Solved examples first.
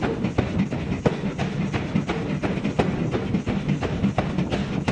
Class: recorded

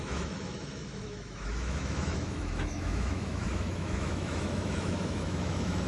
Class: remade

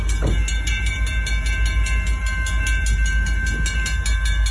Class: recorded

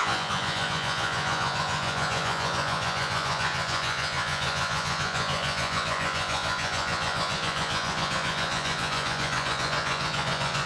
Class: remade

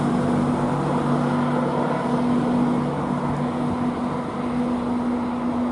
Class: recorded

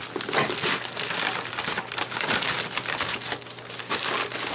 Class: recorded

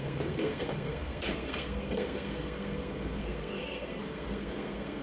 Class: remade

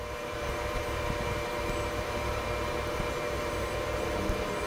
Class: remade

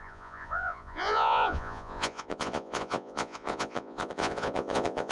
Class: remade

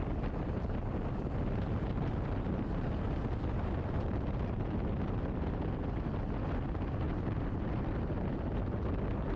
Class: recorded